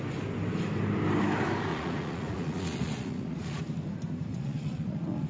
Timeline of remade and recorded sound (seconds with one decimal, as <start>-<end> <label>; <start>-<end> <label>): 0.0-1.7 recorded; 1.7-3.6 remade; 3.6-4.3 recorded; 4.3-5.3 remade